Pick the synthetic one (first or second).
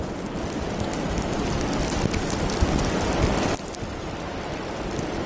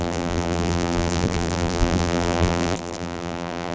second